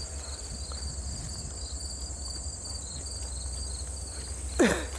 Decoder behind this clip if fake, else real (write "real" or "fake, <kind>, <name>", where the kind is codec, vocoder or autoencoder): real